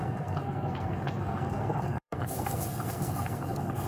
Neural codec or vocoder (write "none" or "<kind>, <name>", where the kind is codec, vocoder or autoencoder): codec, SNAC